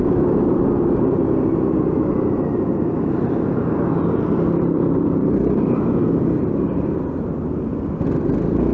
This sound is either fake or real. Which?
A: real